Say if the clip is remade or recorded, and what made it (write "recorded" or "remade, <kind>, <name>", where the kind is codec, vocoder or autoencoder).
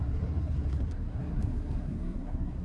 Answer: remade, codec, SNAC